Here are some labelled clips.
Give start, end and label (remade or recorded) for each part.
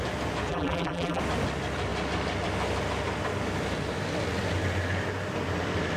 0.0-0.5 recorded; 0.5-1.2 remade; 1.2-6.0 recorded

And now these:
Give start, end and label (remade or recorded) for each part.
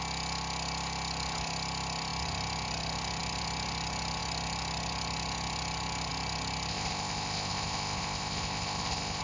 0.0-6.7 recorded; 6.7-9.2 remade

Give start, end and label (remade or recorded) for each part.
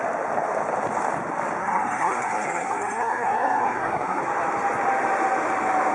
0.0-1.6 recorded; 1.6-4.2 remade; 4.2-5.9 recorded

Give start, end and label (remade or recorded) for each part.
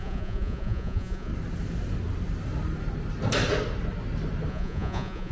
0.0-1.3 remade; 1.3-4.5 recorded; 4.5-5.3 remade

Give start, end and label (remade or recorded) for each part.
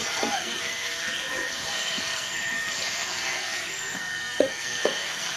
0.0-5.4 remade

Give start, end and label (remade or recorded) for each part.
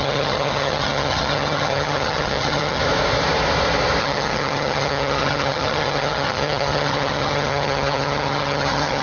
0.0-2.8 remade; 2.8-4.0 recorded; 4.0-9.0 remade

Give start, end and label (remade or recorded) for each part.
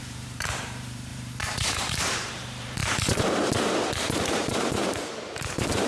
0.0-2.8 remade; 2.8-3.9 recorded; 3.9-5.9 remade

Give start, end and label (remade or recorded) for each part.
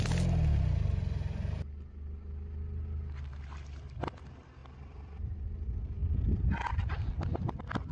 0.0-4.6 recorded; 4.6-5.3 remade; 5.3-6.0 recorded; 6.0-7.1 remade; 7.1-7.9 recorded